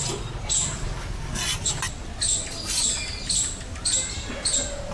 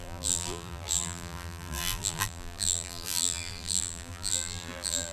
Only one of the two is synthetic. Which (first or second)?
second